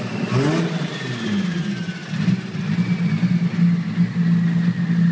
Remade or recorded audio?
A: recorded